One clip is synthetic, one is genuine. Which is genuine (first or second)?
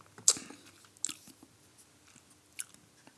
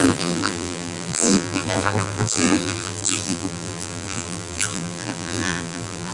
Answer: first